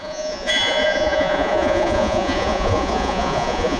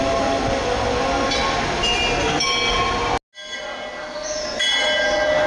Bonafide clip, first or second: second